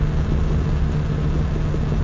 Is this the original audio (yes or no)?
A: yes